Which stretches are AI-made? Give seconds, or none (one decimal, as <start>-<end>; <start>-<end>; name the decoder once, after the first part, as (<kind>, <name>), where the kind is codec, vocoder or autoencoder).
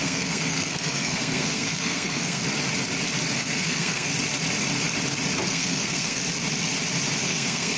0.0-2.4 (codec, SNAC); 3.3-4.1; 5.5-6.2; 7.2-7.8